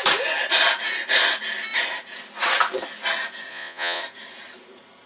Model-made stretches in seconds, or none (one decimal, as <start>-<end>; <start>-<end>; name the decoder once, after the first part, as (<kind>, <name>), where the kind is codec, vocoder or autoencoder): 3.5-4.0 (vocoder, Vocos)